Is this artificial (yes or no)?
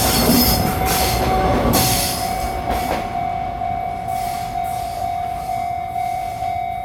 yes